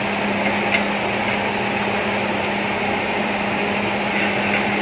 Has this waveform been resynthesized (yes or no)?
no